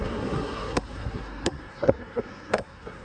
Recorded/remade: remade